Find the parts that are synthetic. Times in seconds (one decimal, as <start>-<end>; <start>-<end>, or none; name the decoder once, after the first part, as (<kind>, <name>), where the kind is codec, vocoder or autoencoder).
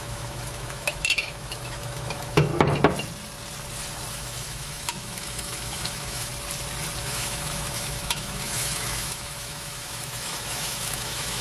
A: 0.0-2.5 (autoencoder, DAC-VAE); 4.1-6.3; 7.0-11.4